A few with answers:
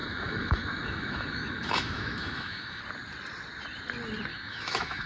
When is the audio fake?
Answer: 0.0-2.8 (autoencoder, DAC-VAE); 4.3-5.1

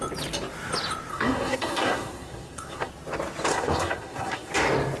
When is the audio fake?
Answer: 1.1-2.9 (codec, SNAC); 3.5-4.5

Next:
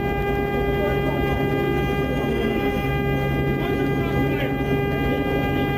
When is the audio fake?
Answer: 2.3-2.9 (codec, SNAC)